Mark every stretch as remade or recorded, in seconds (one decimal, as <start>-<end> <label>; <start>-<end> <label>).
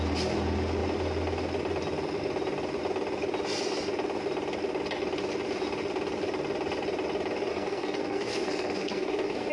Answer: 0.0-7.5 recorded; 7.5-9.5 remade